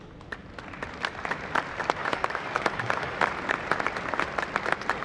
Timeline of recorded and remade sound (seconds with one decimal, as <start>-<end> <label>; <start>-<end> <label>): 0.0-2.0 recorded; 2.0-3.3 remade; 3.3-5.0 recorded